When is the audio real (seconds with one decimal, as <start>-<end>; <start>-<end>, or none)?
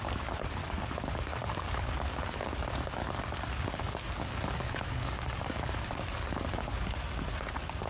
0.0-0.6; 2.5-3.0